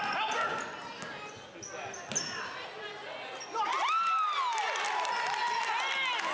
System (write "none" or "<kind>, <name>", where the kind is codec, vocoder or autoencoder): none